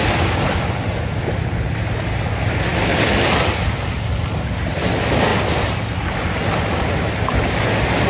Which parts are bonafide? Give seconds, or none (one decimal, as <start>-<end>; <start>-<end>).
0.0-8.1